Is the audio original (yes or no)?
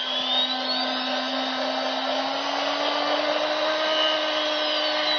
yes